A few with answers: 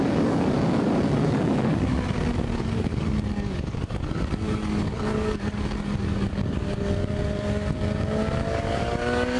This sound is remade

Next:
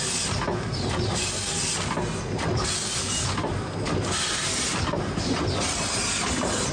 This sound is recorded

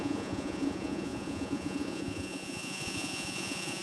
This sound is remade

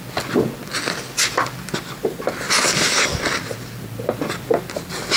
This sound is recorded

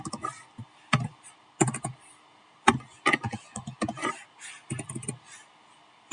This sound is recorded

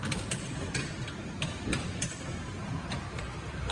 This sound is recorded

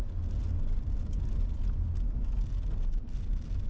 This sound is recorded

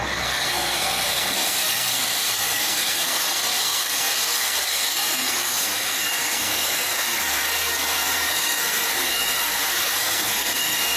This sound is remade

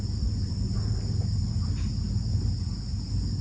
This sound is recorded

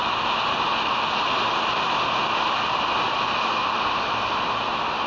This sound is recorded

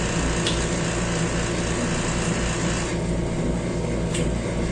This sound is recorded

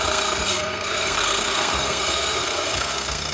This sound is remade